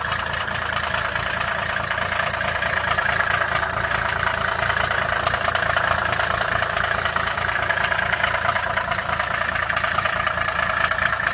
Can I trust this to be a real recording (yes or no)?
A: no